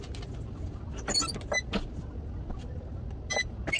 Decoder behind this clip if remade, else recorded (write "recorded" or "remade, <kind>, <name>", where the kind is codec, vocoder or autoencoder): recorded